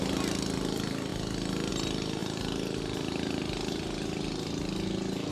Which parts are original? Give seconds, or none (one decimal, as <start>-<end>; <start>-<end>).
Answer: 0.0-5.3